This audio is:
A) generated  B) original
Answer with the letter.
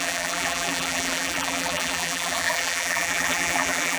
A